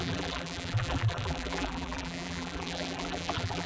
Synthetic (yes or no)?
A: yes